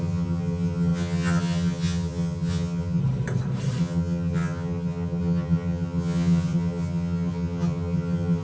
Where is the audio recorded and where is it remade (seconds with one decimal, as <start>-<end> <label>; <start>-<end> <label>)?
0.0-3.0 remade; 3.0-3.8 recorded; 3.8-8.4 remade